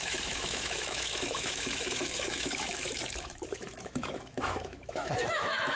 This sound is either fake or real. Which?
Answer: fake